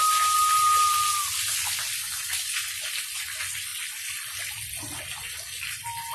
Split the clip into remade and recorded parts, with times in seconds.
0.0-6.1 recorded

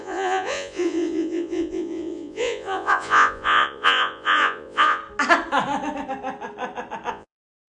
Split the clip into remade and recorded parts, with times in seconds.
0.0-5.0 remade; 5.0-7.1 recorded; 7.1-7.7 remade

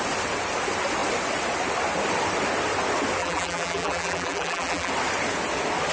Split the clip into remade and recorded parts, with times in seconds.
0.0-3.2 recorded; 3.2-4.9 remade; 4.9-5.9 recorded